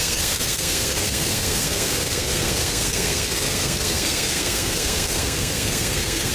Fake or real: fake